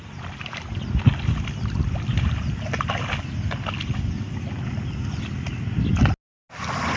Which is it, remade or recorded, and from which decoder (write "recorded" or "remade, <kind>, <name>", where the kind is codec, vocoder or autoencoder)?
recorded